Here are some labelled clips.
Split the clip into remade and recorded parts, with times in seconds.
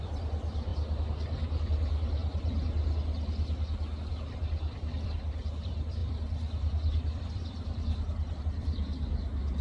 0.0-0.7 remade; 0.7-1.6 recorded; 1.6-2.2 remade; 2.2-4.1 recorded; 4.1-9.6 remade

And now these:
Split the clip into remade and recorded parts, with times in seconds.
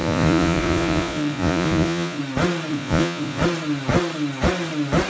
0.0-2.2 remade; 2.2-2.7 recorded; 2.7-3.4 remade; 3.4-5.1 recorded